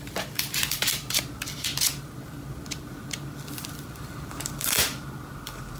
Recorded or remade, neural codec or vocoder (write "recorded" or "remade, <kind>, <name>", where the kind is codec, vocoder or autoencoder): remade, vocoder, BigVGAN v2